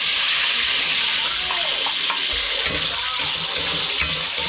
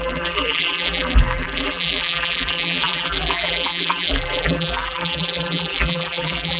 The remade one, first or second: second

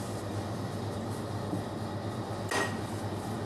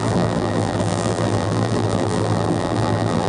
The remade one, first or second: second